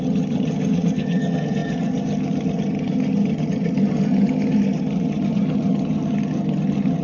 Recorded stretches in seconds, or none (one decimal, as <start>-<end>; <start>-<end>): none